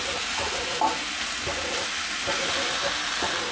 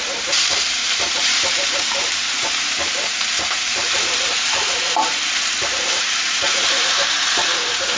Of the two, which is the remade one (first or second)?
second